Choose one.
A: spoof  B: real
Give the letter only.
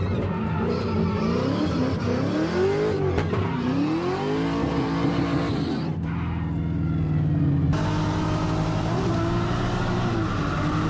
B